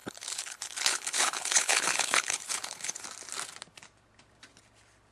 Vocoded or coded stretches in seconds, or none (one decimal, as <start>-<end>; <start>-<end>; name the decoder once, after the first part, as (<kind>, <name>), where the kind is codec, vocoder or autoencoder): 0.0-3.0 (codec, HILCodec)